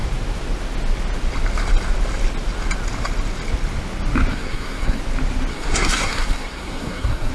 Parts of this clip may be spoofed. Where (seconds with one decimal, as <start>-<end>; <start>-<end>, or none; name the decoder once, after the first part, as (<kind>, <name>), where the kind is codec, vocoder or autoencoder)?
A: 4.3-5.0 (codec, SNAC); 5.5-7.3